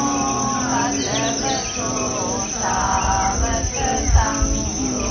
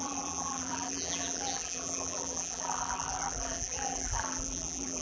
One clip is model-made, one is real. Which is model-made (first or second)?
second